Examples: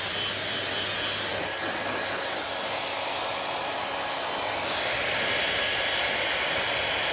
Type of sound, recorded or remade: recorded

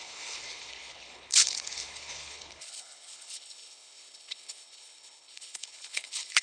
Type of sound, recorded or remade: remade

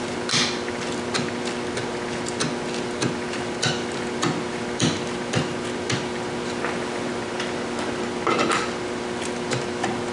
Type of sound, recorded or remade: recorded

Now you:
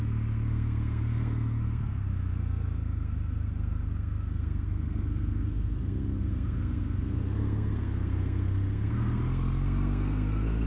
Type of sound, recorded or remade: remade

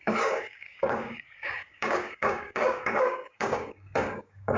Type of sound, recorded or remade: remade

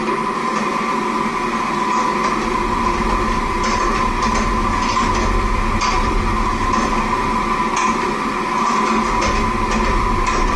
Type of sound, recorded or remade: recorded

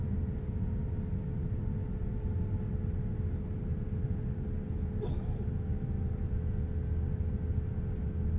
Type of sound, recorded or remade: recorded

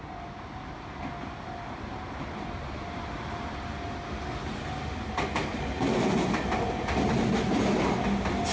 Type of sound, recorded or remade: recorded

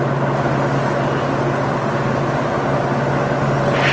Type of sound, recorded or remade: recorded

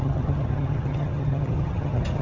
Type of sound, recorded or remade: remade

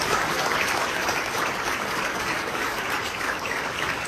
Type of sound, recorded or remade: remade